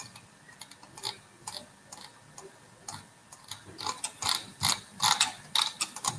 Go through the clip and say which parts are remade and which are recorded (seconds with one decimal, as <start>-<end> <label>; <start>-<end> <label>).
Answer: 0.0-6.2 recorded